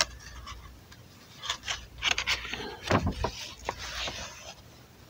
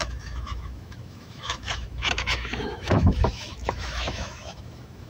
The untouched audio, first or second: first